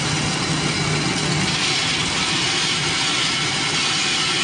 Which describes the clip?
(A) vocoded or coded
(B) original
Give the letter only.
B